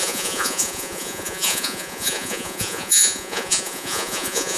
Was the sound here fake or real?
fake